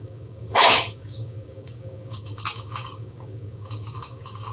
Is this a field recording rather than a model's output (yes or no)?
no